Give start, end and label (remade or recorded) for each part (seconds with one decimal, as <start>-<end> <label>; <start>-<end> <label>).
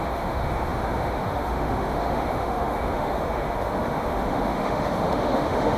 0.0-5.8 remade